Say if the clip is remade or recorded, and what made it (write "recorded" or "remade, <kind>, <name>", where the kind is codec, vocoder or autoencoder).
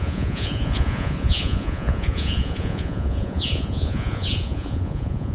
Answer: remade, vocoder, Vocos